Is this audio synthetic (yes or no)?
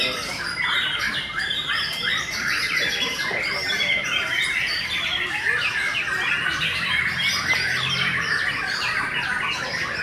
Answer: yes